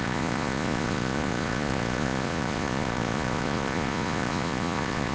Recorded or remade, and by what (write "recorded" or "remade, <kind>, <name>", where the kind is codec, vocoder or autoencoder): remade, vocoder, Vocos